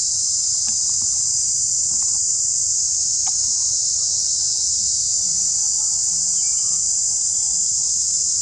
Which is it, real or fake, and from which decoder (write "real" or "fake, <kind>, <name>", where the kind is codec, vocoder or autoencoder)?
fake, vocoder, BigVGAN v2